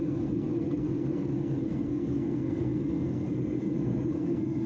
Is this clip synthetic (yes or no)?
yes